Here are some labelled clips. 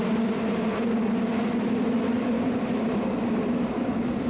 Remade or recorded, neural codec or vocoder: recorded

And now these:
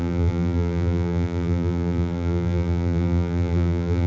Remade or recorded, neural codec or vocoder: remade, vocoder, BigVGAN v2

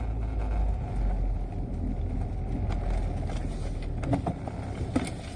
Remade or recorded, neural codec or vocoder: recorded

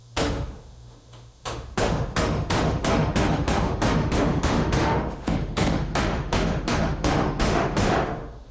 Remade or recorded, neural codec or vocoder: remade, autoencoder, DAC-VAE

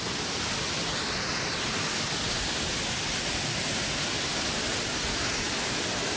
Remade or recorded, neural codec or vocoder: recorded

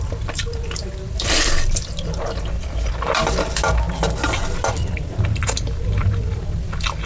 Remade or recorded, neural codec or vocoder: remade, vocoder, BigVGAN v2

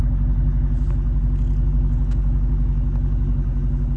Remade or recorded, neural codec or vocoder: recorded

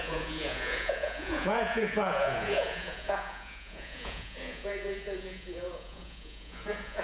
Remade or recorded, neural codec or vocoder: remade, vocoder, Vocos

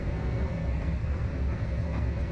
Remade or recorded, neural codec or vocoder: remade, codec, SNAC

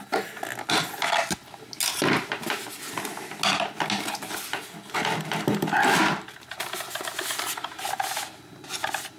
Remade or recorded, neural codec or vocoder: recorded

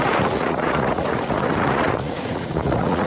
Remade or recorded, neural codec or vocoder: remade, vocoder, Vocos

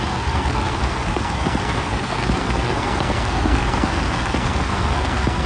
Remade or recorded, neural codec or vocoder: remade, codec, SNAC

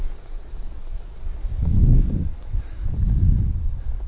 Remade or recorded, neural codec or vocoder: recorded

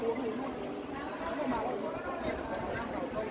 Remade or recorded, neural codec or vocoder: recorded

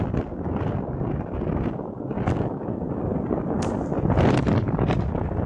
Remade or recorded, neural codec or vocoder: recorded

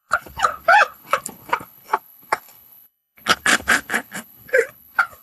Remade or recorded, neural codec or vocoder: remade, codec, HILCodec